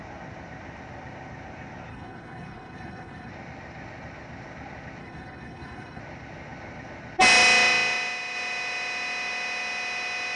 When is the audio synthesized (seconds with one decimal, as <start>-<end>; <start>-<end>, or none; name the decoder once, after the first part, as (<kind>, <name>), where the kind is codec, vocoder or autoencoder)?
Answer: 1.9-3.3 (codec, HILCodec); 5.0-6.0